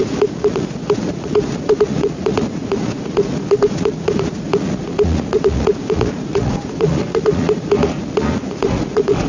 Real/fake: fake